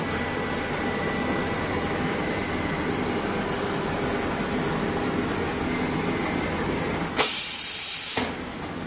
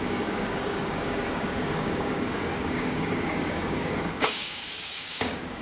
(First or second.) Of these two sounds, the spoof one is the second